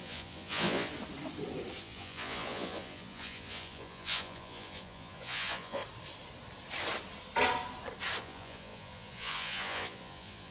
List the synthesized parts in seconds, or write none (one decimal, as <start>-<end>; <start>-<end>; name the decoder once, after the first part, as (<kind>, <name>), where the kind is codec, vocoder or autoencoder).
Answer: 0.0-0.9 (vocoder, Vocos); 1.8-5.8; 8.2-10.5